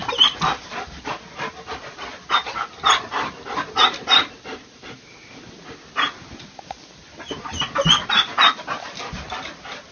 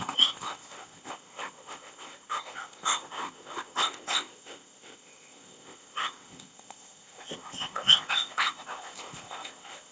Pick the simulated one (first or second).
second